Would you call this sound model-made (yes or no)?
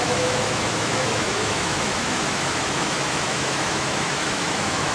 yes